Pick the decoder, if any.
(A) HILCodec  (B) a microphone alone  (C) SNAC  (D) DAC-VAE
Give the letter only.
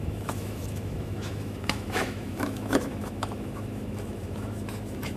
D